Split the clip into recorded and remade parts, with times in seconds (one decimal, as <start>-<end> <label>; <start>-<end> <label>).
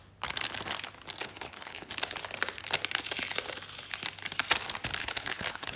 0.0-1.2 recorded; 1.2-1.9 remade; 1.9-5.0 recorded; 5.0-5.8 remade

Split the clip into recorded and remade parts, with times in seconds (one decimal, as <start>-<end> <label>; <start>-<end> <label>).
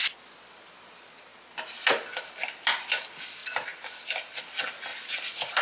0.0-3.4 recorded; 3.4-4.4 remade; 4.4-4.9 recorded; 4.9-5.6 remade